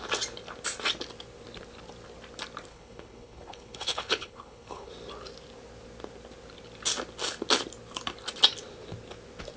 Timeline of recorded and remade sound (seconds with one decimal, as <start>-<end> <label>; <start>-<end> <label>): 0.0-2.7 recorded; 2.7-4.9 remade; 4.9-9.6 recorded